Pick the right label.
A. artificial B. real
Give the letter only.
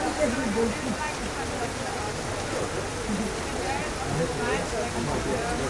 B